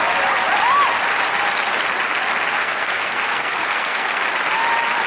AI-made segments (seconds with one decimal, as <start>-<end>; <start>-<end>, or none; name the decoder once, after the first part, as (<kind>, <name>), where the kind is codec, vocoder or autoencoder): 2.5-4.2 (codec, SNAC)